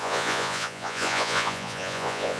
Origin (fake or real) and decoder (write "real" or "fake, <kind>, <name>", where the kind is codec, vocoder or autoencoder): fake, vocoder, Vocos